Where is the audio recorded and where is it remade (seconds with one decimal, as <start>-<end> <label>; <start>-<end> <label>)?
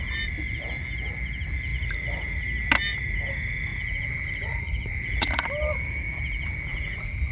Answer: 0.0-3.7 recorded; 3.7-5.5 remade; 5.5-6.7 recorded; 6.7-7.3 remade